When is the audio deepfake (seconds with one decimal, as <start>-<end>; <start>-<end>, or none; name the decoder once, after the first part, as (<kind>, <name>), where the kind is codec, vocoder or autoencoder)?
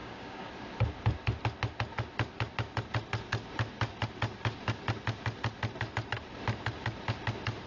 0.0-0.5 (codec, DAC)